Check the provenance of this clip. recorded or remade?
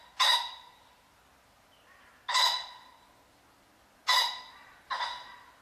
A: recorded